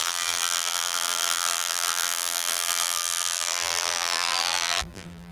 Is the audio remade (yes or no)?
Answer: yes